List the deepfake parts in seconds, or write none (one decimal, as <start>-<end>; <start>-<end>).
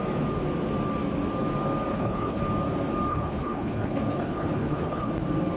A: 1.9-2.4; 3.1-5.1